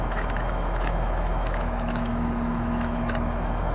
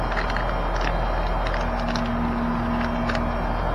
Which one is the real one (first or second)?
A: second